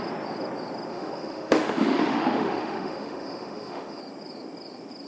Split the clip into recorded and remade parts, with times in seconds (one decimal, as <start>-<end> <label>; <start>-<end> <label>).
0.0-0.9 recorded; 0.9-4.0 remade; 4.0-5.1 recorded